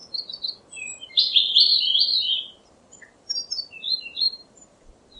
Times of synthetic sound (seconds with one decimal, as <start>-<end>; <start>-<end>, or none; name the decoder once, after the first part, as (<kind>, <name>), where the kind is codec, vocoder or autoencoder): 1.1-5.2 (vocoder, BigVGAN v2)